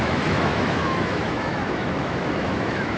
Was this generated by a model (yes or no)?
yes